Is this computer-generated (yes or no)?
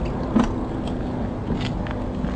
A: no